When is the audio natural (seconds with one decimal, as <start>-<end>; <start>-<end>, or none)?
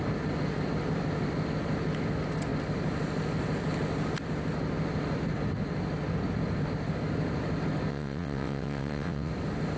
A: 0.0-7.9; 9.3-9.8